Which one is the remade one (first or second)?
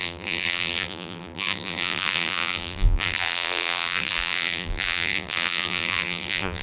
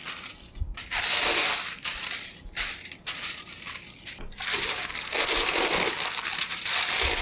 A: first